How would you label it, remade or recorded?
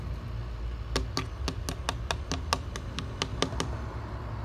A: recorded